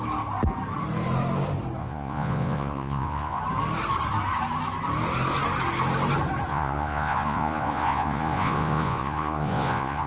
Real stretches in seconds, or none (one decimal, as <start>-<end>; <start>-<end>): 0.0-1.8; 3.4-6.5